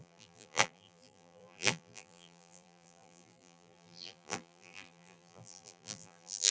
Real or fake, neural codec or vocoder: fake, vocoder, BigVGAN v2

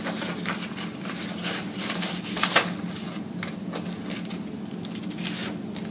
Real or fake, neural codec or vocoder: real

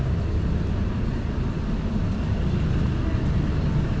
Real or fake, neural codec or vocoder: real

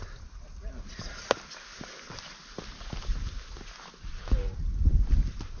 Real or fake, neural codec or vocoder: real